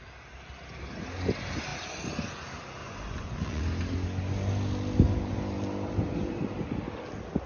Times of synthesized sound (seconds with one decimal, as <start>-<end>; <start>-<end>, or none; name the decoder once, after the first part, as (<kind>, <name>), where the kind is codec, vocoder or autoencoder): 2.8-3.6 (vocoder, Vocos)